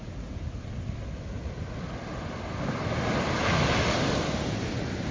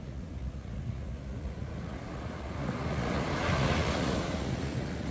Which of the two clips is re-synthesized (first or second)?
second